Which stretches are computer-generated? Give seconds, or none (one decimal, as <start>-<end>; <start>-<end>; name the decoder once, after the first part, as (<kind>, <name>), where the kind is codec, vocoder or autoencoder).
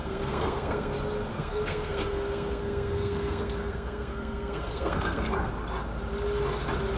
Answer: 0.0-0.9 (codec, SNAC); 1.3-5.5